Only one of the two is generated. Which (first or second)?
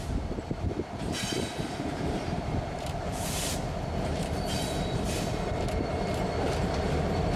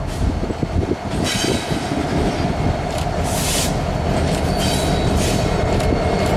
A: first